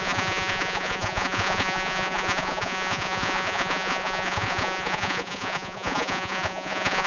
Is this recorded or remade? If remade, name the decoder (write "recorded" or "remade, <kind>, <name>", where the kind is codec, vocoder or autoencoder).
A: remade, vocoder, Vocos